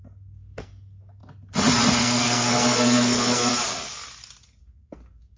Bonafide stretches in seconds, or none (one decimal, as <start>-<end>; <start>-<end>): 1.2-2.0; 3.5-4.6